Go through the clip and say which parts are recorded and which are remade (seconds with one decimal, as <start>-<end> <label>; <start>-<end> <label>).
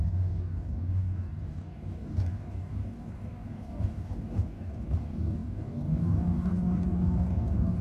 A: 0.0-7.8 remade